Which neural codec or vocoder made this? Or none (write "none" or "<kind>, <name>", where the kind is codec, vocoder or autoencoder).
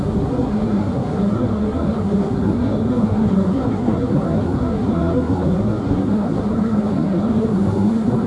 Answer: codec, SNAC